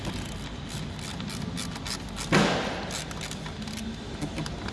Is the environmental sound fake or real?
real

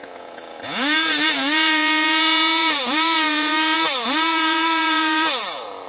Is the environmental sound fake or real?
fake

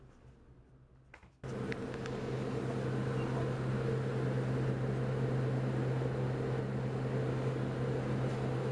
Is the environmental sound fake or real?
real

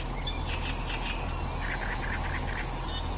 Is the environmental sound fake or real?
real